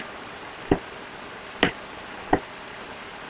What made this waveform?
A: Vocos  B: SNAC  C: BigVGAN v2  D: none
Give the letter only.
C